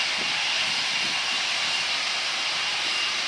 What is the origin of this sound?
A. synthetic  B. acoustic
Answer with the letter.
B